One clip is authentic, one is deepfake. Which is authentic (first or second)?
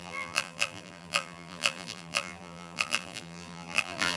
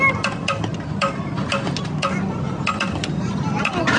second